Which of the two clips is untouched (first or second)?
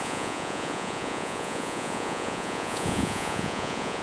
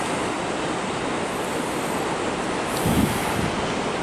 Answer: second